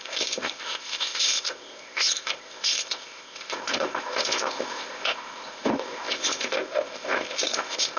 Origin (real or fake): fake